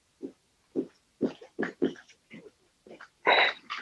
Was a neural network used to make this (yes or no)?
yes